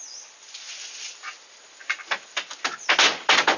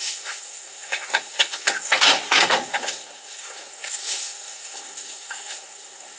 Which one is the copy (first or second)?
second